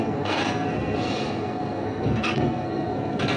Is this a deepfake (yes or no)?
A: yes